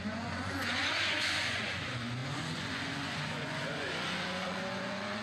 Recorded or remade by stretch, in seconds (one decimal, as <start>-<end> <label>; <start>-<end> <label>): 0.0-5.2 remade